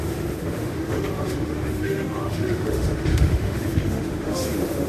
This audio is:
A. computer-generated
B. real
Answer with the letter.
A